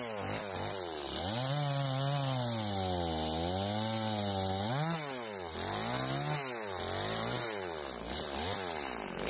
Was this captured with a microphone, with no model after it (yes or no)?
yes